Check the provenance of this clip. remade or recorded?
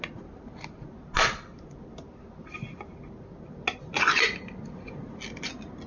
recorded